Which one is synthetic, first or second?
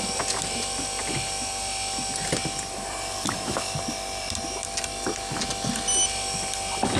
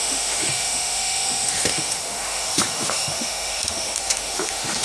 second